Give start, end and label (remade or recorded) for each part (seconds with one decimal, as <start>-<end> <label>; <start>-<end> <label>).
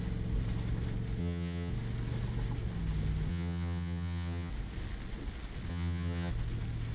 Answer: 0.0-1.2 recorded; 1.2-1.7 remade; 1.7-3.3 recorded; 3.3-4.5 remade; 4.5-5.7 recorded; 5.7-6.3 remade; 6.3-6.9 recorded